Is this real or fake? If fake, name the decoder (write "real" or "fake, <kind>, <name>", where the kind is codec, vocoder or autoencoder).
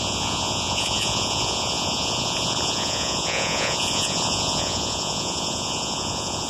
fake, vocoder, Vocos